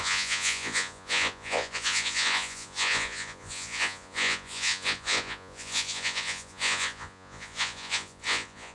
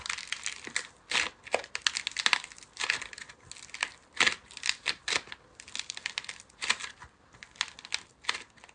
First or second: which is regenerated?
first